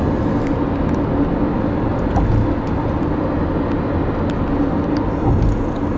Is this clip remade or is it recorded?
recorded